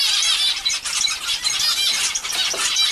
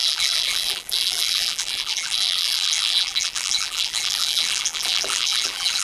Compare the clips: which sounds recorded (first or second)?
first